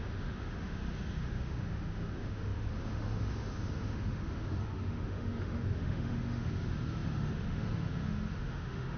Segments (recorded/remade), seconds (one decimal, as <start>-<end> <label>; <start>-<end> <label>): 0.0-9.0 remade